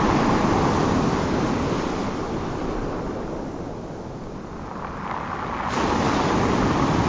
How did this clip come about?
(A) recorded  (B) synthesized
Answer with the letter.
A